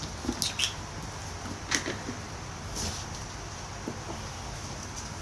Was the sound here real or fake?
real